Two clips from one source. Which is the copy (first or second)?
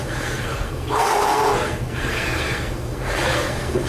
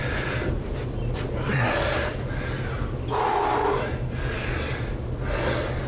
first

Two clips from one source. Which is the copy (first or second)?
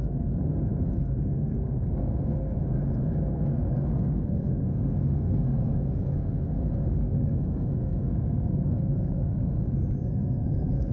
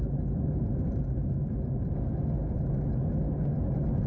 first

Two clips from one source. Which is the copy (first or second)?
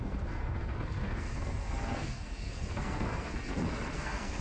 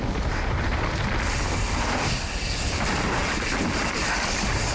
first